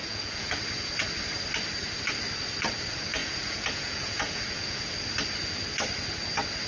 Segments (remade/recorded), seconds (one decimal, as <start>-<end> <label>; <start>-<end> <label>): 0.0-0.6 remade; 0.6-3.2 recorded; 3.2-4.9 remade; 4.9-6.7 recorded